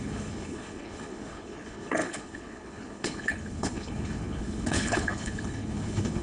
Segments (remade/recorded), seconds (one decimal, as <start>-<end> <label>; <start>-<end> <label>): 0.0-6.2 remade